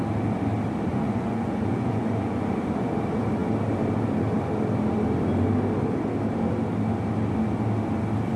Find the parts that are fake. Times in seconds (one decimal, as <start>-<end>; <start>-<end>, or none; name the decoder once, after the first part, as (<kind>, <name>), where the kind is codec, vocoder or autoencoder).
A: 0.9-2.9 (vocoder, Vocos)